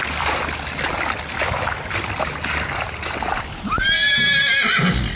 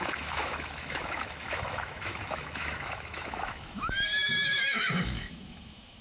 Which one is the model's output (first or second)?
second